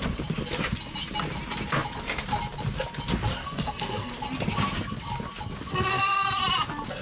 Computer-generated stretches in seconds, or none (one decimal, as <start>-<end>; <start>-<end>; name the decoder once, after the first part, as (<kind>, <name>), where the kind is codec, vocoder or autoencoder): 3.4-4.1 (codec, SNAC); 5.7-6.4